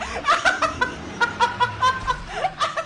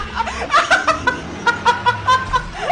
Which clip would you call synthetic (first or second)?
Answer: first